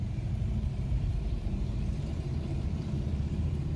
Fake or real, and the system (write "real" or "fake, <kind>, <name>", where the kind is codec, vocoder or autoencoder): fake, vocoder, BigVGAN v2